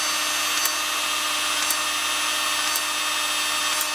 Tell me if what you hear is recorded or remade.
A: recorded